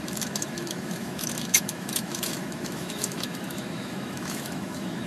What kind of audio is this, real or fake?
fake